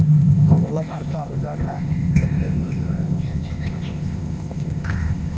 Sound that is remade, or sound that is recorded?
remade